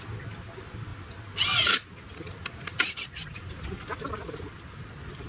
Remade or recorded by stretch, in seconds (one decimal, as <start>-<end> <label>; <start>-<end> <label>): 0.0-5.3 recorded